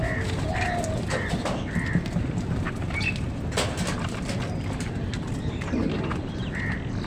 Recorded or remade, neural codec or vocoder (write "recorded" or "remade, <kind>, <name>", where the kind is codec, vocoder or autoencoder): recorded